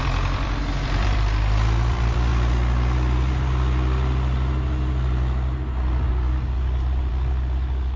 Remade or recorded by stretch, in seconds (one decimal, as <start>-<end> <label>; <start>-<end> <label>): 0.0-2.3 remade; 2.3-6.1 recorded; 6.1-8.0 remade